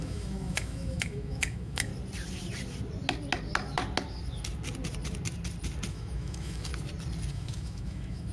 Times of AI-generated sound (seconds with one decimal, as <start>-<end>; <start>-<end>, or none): 0.0-1.9; 5.9-6.7; 7.3-8.3

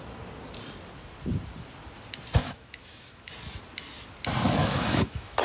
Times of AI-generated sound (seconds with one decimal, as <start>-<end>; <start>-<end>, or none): 2.4-3.3; 4.6-5.4

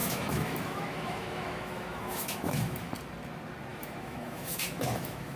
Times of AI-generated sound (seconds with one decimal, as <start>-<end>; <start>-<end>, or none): 0.0-2.9; 3.7-5.4

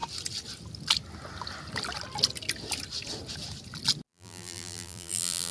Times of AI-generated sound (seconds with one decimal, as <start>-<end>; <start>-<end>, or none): 4.1-5.5

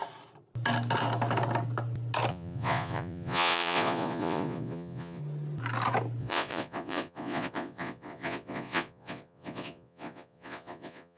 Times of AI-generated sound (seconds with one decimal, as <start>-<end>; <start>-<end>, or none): 2.3-5.2; 6.2-11.2

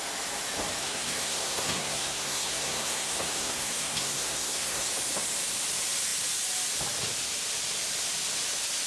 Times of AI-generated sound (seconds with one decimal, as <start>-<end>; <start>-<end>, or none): 0.8-4.9